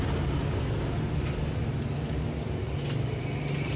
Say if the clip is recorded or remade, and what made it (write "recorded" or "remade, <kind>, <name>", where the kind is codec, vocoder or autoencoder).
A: recorded